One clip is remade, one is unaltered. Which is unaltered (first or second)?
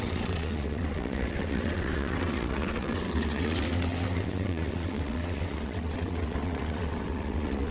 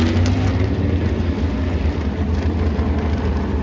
second